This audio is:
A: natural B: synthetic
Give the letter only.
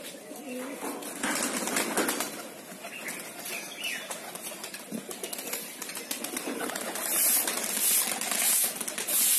A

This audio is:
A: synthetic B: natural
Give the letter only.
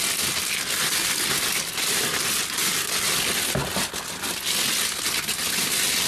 B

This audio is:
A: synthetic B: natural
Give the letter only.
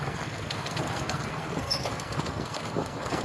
A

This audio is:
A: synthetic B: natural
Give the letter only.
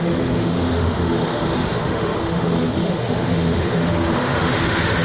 A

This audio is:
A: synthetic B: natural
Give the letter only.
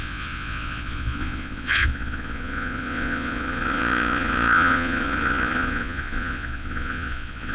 A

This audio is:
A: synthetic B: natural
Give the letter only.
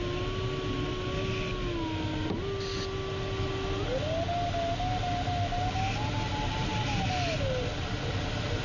B